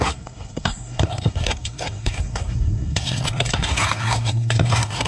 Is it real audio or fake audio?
fake